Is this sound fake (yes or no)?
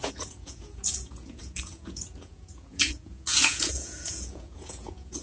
yes